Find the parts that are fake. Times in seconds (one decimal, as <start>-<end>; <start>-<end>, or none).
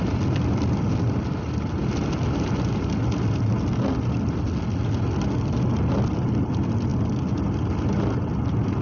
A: 0.0-1.8; 6.4-6.9; 8.2-8.8